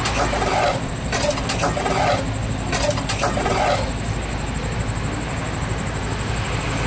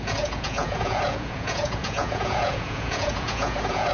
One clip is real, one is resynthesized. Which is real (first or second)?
first